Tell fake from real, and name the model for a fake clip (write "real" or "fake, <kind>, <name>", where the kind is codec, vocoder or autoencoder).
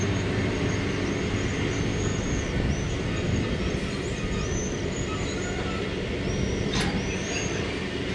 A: real